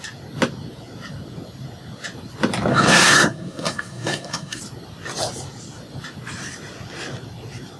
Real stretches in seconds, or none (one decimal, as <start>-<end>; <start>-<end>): 0.0-2.7; 4.6-7.8